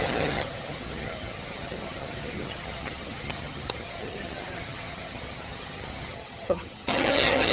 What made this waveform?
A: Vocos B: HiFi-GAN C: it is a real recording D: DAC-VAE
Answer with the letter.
B